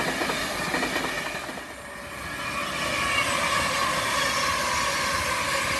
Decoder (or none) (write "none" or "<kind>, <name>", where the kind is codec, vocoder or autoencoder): none